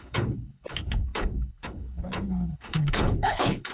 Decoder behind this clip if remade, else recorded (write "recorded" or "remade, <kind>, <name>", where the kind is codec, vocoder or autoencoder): remade, codec, HILCodec